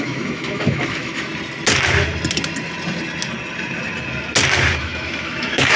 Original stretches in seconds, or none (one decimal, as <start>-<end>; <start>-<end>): 1.3-4.8